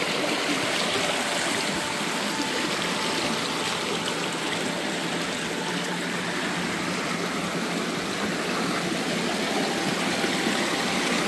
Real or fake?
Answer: real